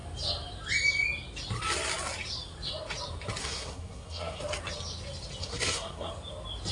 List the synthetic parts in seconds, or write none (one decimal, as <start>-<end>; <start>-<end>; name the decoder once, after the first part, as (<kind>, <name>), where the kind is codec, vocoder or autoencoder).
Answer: 3.4-4.4 (codec, SNAC); 5.4-6.1